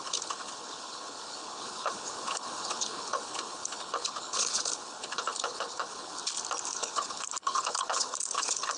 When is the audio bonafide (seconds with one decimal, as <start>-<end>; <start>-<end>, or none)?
6.2-6.7